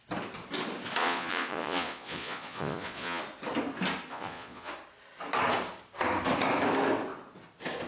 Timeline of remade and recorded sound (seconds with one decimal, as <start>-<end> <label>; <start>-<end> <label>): 0.0-1.0 recorded; 1.0-3.2 remade; 3.2-4.1 recorded; 4.1-4.7 remade; 4.7-7.9 recorded